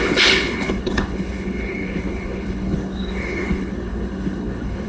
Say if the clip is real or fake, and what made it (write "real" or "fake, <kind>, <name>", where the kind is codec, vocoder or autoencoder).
fake, codec, HILCodec